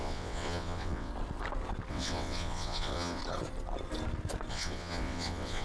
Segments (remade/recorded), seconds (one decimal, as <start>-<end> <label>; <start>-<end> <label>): 0.0-1.1 remade; 1.1-1.9 recorded; 1.9-3.2 remade; 3.2-4.5 recorded; 4.5-5.6 remade